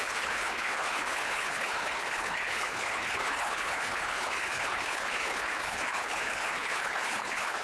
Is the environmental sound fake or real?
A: fake